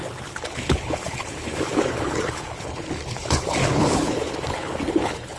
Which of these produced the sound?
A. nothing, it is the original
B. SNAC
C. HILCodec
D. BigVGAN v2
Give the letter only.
C